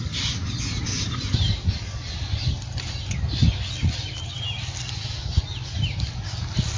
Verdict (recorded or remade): recorded